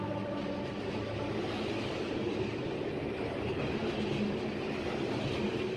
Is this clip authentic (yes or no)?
yes